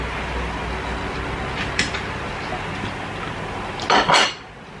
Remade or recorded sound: recorded